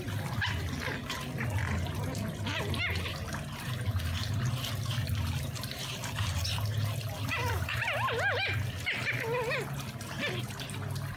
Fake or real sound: real